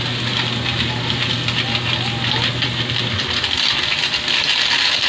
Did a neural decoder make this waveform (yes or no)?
no